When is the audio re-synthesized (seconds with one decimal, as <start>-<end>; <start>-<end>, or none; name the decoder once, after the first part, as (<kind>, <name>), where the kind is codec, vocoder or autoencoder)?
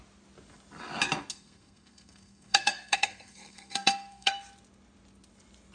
1.3-4.3 (codec, SNAC)